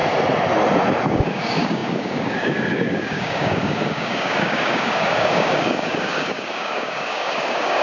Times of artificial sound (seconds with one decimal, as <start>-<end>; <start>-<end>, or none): 1.1-7.8